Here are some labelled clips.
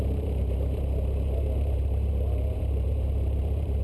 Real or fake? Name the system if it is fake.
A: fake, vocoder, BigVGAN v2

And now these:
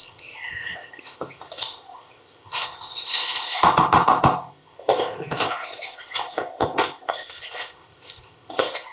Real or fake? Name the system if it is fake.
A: fake, codec, ZipCodec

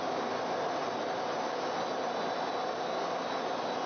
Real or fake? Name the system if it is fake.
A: real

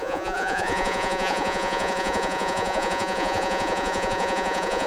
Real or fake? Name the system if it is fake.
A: fake, vocoder, Vocos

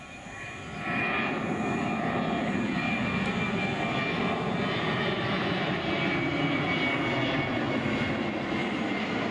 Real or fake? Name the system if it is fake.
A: fake, vocoder, BigVGAN v2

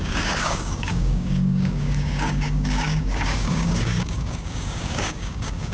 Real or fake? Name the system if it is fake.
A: fake, codec, DAC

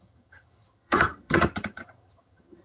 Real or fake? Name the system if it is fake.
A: fake, vocoder, HiFi-GAN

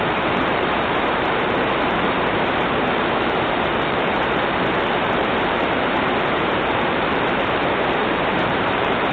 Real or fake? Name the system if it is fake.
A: fake, vocoder, BigVGAN v2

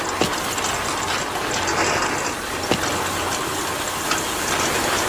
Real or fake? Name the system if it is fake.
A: real